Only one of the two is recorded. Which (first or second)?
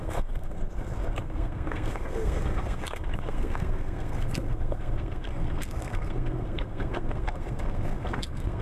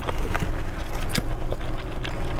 second